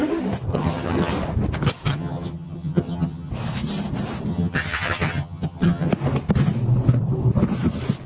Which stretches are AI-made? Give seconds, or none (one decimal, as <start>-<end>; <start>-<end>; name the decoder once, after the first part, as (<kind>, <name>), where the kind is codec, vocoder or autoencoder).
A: 0.5-1.1 (vocoder, HiFi-GAN); 1.9-3.3; 4.3-5.9